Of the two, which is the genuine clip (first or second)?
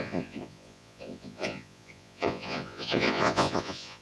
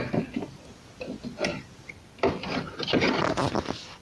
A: second